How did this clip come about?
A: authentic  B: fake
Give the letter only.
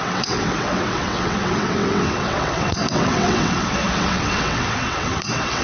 B